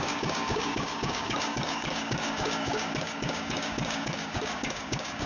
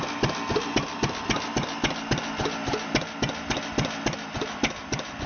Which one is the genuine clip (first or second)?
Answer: second